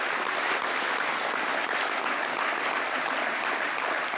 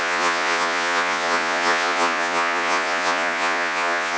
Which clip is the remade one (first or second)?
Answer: second